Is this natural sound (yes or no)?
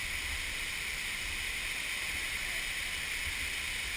yes